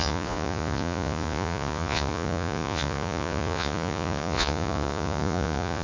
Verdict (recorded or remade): remade